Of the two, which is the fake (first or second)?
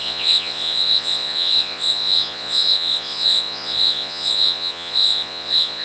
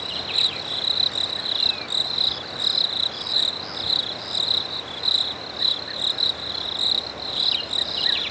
first